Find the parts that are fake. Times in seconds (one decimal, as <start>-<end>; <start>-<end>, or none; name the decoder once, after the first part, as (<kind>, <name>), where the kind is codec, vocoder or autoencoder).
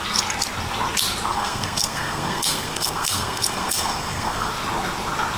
1.3-4.5 (codec, SNAC)